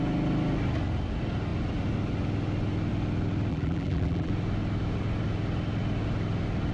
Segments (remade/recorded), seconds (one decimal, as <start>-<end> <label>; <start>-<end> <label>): 0.0-3.5 recorded; 3.5-4.3 remade; 4.3-6.7 recorded